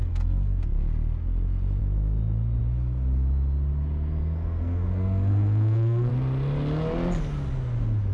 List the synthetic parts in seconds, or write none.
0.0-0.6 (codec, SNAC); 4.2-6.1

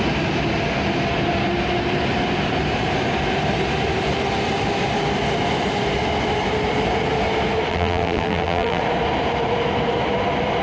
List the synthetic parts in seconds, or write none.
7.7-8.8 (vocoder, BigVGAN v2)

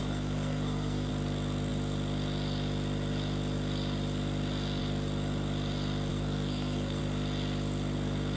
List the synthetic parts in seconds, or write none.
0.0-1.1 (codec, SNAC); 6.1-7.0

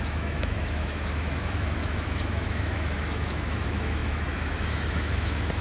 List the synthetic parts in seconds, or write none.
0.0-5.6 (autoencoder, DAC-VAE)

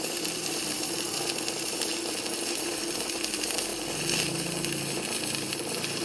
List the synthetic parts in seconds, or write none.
0.0-1.9 (vocoder, BigVGAN v2); 2.9-3.7; 4.9-6.0

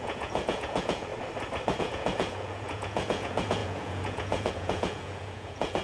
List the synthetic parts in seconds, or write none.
0.0-1.1 (vocoder, Vocos); 1.8-5.8